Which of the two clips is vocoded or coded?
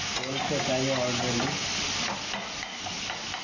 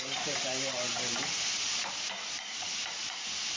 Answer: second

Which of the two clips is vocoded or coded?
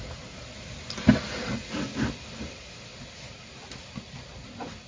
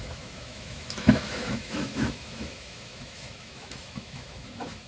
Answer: second